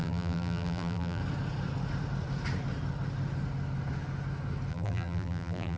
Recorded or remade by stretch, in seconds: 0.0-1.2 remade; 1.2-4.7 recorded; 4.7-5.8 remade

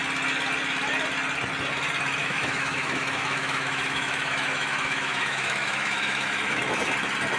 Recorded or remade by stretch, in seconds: 0.0-2.2 recorded; 2.2-6.6 remade; 6.6-7.4 recorded

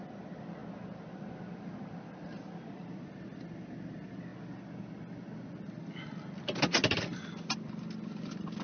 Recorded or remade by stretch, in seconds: 0.0-8.6 recorded

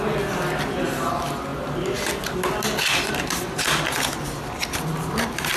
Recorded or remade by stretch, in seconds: 0.0-5.6 recorded

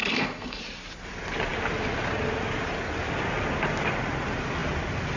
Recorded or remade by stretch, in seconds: 0.0-0.6 remade; 0.6-5.2 recorded

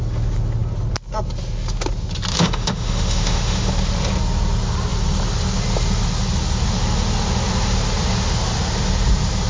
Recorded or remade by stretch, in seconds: 0.0-2.3 recorded; 2.3-3.7 remade; 3.7-9.5 recorded

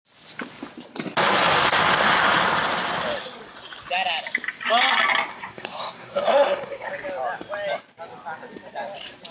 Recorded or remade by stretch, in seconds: 0.0-5.3 recorded; 5.3-6.9 remade; 6.9-9.3 recorded

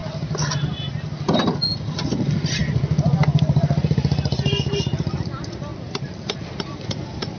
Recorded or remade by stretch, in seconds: 0.0-7.4 remade